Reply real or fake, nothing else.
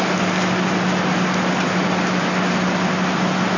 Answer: real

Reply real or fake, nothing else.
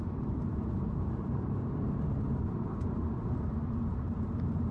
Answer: fake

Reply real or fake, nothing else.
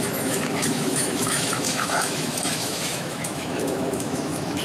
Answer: fake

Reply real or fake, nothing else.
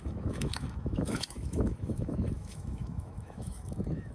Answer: fake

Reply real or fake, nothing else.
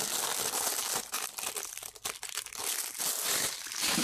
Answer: real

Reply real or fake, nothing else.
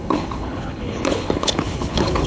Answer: fake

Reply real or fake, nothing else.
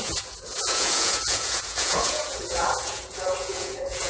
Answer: fake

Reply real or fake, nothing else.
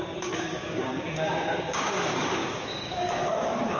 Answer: fake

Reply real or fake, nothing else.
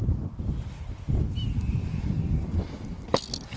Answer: real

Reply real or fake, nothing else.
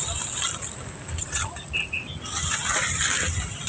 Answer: real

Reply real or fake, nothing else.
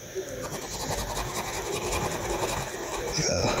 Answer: real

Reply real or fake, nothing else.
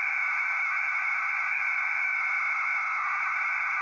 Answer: real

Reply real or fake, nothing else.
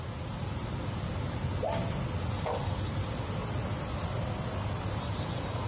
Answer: real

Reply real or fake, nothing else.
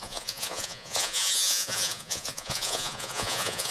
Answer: fake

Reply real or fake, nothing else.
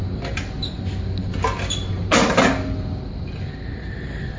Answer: real